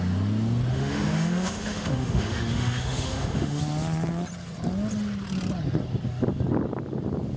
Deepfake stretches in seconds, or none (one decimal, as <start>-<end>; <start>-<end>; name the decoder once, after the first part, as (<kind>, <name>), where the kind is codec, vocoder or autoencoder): 0.7-3.6 (autoencoder, DAC-VAE)

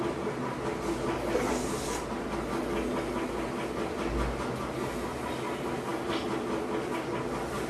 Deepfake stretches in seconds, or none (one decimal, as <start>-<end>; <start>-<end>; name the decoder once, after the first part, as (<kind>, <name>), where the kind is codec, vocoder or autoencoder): none

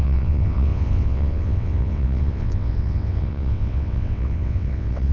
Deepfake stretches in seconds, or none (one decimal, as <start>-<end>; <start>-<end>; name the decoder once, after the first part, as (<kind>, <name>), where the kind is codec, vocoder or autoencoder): 0.0-5.1 (vocoder, WaveNeXt)

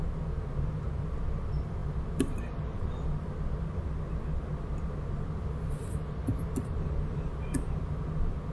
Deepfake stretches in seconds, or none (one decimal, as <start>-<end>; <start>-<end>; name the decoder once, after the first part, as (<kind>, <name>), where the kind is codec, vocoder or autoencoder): none

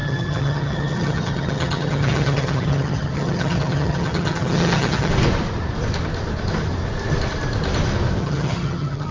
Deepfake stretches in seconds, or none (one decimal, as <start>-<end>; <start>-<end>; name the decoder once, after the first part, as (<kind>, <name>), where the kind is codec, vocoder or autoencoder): 0.0-5.1 (vocoder, HiFi-GAN); 8.2-9.1

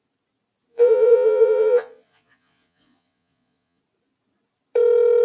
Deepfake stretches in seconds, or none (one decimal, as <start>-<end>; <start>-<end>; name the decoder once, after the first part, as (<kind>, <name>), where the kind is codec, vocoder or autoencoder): 0.7-3.8 (vocoder, Vocos)

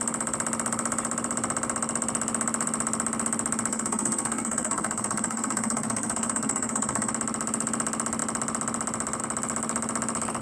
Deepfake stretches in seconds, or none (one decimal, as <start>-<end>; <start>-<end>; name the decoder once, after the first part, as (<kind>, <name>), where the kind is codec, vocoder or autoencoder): 3.7-7.1 (codec, SNAC)